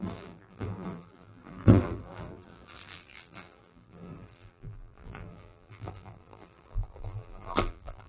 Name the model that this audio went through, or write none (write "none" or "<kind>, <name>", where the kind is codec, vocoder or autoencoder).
vocoder, BigVGAN v2